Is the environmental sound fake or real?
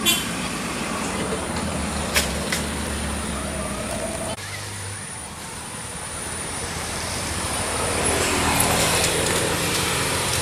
fake